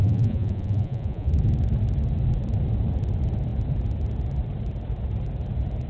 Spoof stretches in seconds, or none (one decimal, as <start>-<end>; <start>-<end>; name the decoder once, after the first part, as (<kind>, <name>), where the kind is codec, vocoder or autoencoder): 0.0-1.3 (vocoder, Vocos)